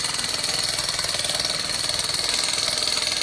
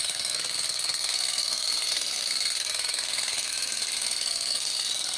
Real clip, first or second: first